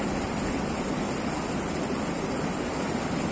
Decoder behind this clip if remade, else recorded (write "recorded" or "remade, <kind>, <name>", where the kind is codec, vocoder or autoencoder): remade, vocoder, BigVGAN v2